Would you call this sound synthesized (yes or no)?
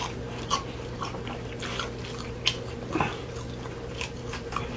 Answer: no